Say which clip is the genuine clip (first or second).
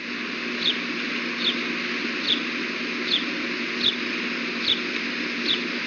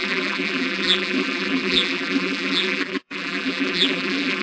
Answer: first